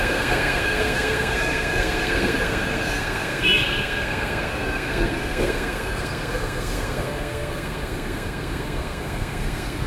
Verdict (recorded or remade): remade